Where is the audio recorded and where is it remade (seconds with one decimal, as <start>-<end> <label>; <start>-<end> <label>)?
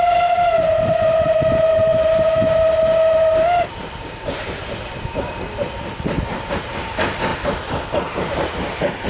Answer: 0.0-7.3 recorded; 7.3-8.5 remade; 8.5-9.1 recorded